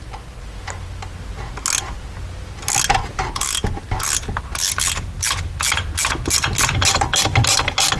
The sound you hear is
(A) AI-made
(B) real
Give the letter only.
B